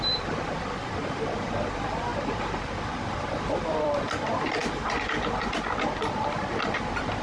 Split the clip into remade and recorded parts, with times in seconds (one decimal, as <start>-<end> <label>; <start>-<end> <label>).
0.0-4.6 remade; 4.6-5.4 recorded; 5.4-7.2 remade